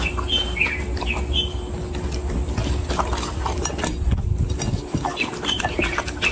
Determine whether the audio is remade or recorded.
recorded